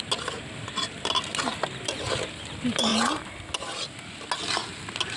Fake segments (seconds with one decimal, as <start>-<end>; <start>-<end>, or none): none